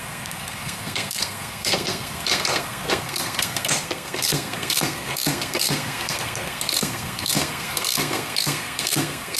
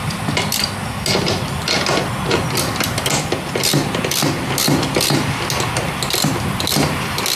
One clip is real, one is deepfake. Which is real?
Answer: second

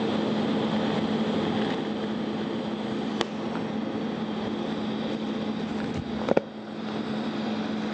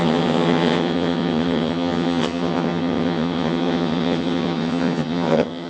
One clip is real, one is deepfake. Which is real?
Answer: first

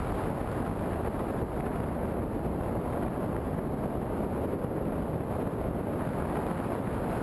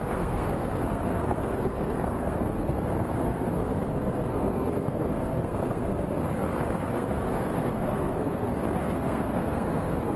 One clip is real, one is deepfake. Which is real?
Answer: first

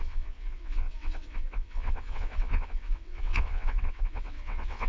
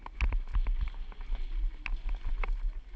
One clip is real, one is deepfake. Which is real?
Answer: second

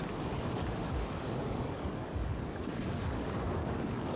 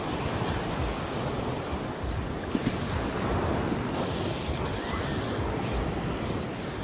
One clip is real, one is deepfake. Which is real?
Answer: second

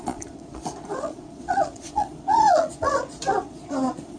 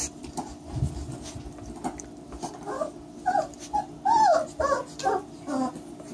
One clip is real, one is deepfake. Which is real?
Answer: second